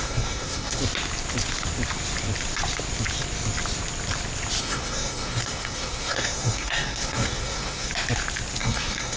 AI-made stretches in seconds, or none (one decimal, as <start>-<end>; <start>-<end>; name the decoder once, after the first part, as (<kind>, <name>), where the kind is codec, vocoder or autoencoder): 0.0-0.8 (codec, SNAC); 4.6-7.9; 8.6-9.2